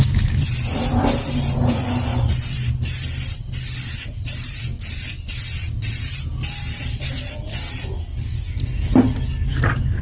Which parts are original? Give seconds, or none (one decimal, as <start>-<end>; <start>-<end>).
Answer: 0.0-2.1; 2.7-10.0